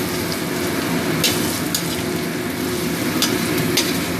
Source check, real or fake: real